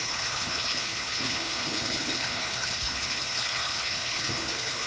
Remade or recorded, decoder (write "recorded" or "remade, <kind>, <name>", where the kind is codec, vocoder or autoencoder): remade, codec, HILCodec